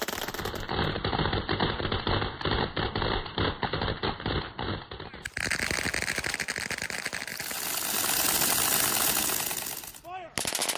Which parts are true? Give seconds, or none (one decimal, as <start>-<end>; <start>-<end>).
0.0-10.8